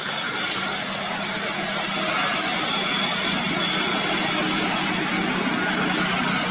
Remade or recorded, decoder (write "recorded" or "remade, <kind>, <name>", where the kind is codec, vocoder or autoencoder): recorded